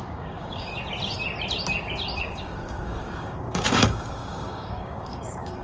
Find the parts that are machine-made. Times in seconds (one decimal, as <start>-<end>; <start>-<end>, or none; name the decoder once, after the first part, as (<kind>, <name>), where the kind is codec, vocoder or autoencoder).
0.0-0.7 (codec, DAC); 2.2-5.6